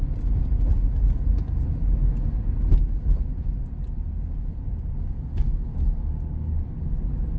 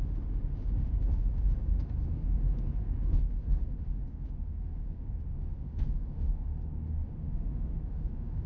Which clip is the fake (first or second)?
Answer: second